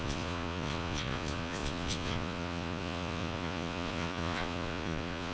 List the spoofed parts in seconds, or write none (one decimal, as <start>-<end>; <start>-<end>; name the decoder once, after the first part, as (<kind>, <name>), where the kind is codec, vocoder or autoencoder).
0.0-5.3 (vocoder, Vocos)